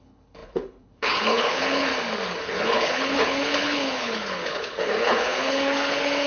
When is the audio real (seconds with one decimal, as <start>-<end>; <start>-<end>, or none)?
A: 1.9-2.4

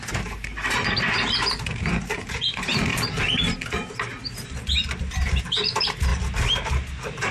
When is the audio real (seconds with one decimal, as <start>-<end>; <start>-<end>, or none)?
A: 2.9-5.4; 6.1-7.3

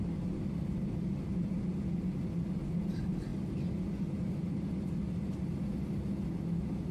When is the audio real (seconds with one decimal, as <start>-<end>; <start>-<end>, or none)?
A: 0.0-6.9

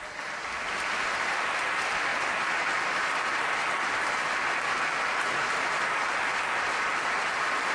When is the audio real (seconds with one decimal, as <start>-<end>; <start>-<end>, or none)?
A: 0.0-7.7

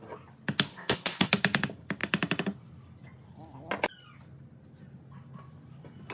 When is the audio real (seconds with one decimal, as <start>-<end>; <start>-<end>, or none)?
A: 0.0-0.7; 1.3-6.1

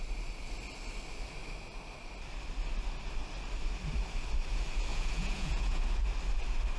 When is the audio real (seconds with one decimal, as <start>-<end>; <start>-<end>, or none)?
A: 0.0-4.9; 5.8-6.8

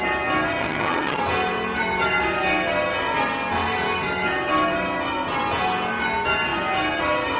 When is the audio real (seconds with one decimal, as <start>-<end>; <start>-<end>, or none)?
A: 0.0-0.6; 1.2-7.4

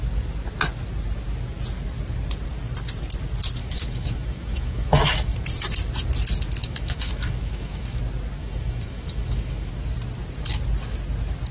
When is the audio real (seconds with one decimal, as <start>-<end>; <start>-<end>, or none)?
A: 0.0-3.6; 5.4-6.6; 8.0-8.4; 9.7-11.5